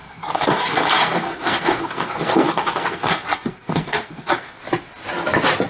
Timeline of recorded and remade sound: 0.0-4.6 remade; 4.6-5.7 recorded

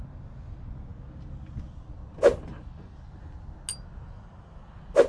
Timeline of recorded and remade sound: 0.0-5.1 recorded

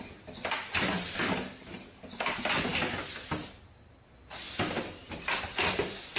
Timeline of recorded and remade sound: 0.0-6.2 recorded

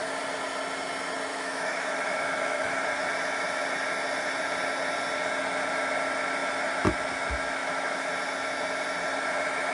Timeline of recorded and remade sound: 0.0-1.3 recorded; 1.3-2.7 remade; 2.7-7.6 recorded; 7.6-8.1 remade; 8.1-9.7 recorded

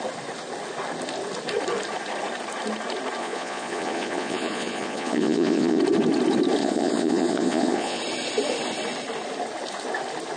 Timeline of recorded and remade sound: 0.0-3.2 recorded; 3.2-5.8 remade; 5.8-6.6 recorded; 6.6-8.0 remade; 8.0-10.4 recorded

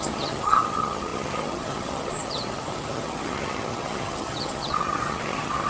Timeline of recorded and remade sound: 0.0-5.7 remade